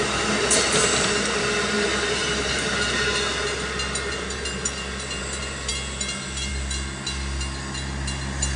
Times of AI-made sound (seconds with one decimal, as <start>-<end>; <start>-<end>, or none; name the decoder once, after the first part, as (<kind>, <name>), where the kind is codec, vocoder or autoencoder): none